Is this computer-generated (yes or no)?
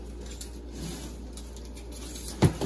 no